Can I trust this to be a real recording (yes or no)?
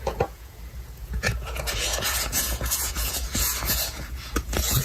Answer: no